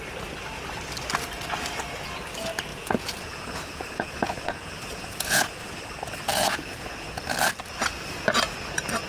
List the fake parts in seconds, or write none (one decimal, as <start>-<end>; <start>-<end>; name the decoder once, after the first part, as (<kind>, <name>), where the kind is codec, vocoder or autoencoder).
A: 2.7-5.7 (vocoder, Vocos); 6.3-7.2